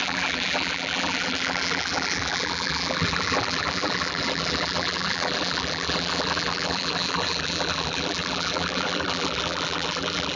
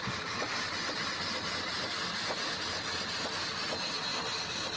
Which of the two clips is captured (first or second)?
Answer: second